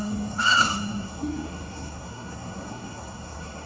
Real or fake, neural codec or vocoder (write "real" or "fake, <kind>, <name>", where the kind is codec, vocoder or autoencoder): fake, codec, SNAC